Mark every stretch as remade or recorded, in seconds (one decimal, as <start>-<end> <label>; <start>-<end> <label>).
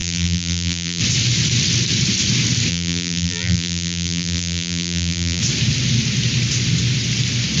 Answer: 0.0-1.0 remade; 1.0-2.7 recorded; 2.7-5.4 remade; 5.4-7.6 recorded